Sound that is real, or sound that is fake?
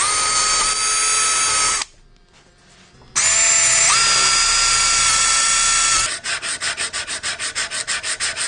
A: real